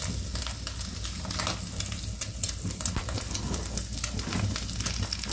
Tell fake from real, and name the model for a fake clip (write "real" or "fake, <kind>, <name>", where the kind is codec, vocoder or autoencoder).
real